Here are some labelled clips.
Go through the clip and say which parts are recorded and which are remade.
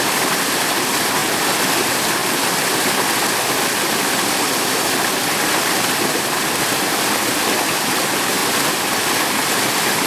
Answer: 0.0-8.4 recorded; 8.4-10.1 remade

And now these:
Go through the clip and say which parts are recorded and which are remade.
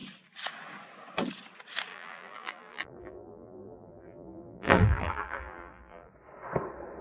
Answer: 0.0-1.9 recorded; 1.9-6.1 remade; 6.1-7.0 recorded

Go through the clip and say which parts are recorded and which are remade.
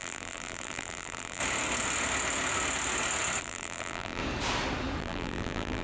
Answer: 0.0-1.4 remade; 1.4-3.4 recorded; 3.4-4.2 remade; 4.2-5.0 recorded; 5.0-5.8 remade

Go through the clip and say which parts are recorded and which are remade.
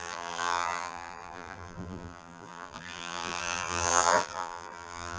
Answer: 0.0-5.2 remade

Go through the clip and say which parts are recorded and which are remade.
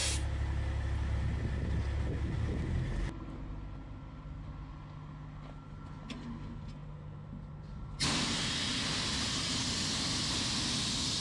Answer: 0.0-11.2 recorded